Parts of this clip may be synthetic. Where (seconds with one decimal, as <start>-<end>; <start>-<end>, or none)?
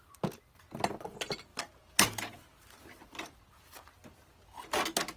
1.5-3.4